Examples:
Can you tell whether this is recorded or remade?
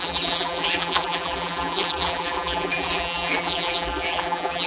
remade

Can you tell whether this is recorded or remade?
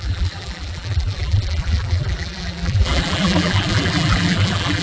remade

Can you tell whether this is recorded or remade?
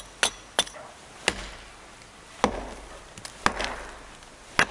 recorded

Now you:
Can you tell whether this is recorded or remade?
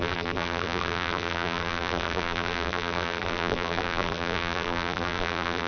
remade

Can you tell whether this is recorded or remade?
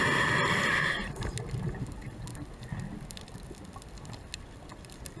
recorded